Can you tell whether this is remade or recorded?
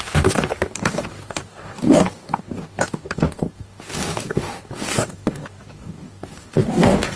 remade